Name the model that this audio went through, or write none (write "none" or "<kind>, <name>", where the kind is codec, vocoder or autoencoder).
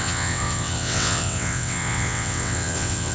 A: vocoder, WaveNeXt